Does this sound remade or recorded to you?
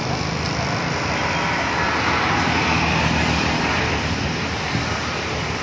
recorded